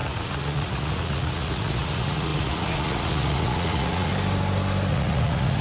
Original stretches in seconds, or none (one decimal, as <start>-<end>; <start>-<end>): 4.1-4.9

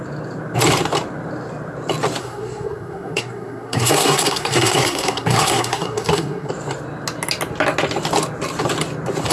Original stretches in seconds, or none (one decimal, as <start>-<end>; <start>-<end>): 0.0-2.2; 6.5-9.3

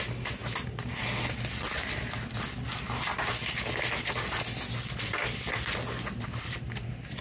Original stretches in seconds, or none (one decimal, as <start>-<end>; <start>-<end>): 0.0-7.2

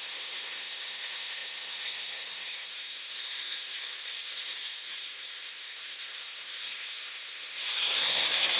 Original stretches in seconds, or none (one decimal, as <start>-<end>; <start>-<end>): none

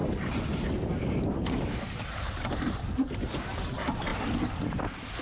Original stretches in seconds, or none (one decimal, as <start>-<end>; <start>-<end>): 0.0-1.0; 4.1-5.2

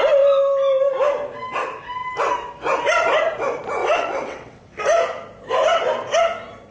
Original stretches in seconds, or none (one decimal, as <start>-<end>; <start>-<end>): 0.0-3.8; 4.8-6.7

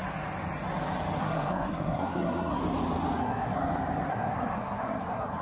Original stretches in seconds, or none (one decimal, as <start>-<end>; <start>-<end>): 0.0-1.2; 2.6-3.2; 3.6-4.1

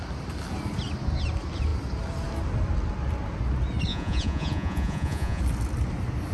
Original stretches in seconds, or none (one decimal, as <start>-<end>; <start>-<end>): 0.0-3.9; 5.4-6.3